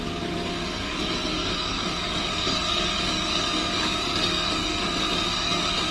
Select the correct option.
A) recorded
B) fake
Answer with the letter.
B